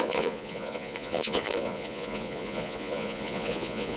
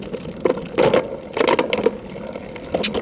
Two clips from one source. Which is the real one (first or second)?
second